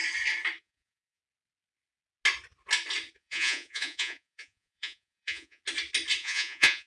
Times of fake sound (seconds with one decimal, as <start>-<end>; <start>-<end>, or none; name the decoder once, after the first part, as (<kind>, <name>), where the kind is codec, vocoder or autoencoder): 0.6-1.2 (vocoder, Vocos); 3.2-5.6; 6.2-6.9